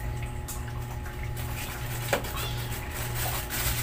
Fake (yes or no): no